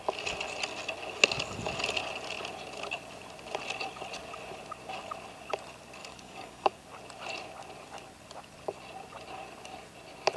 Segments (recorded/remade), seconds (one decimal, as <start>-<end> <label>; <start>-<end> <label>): 0.0-6.0 recorded; 6.0-6.7 remade; 6.7-10.4 recorded